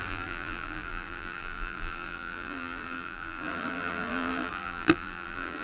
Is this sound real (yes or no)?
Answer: no